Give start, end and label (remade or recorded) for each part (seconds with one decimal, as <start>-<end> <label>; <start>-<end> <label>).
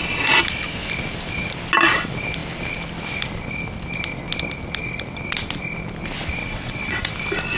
0.0-6.4 recorded; 6.4-7.1 remade; 7.1-7.6 recorded